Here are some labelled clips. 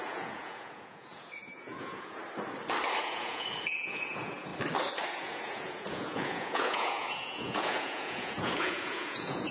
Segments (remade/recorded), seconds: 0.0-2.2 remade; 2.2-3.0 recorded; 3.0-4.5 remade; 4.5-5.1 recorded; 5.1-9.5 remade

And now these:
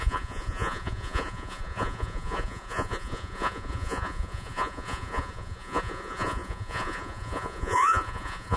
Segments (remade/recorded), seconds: 0.0-8.6 remade

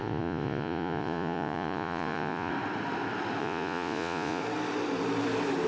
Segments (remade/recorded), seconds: 0.0-2.5 remade; 2.5-3.4 recorded; 3.4-4.4 remade; 4.4-5.7 recorded

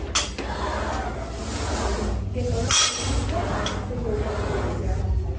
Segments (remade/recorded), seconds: 0.0-5.4 recorded